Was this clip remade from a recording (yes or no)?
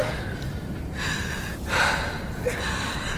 no